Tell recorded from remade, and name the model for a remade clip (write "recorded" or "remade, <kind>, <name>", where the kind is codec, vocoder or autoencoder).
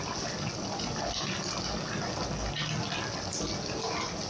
recorded